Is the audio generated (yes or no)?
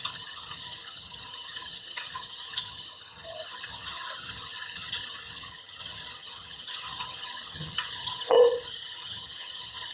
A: yes